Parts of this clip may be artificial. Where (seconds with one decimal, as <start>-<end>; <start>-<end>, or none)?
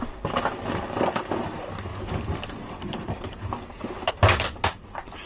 none